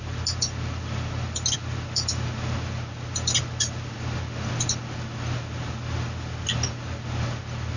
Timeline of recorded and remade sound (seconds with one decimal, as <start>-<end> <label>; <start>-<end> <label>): 0.0-7.8 recorded